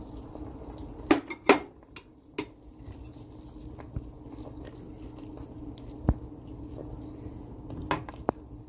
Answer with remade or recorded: recorded